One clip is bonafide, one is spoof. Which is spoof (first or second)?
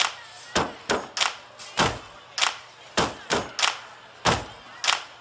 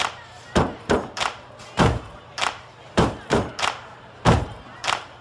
second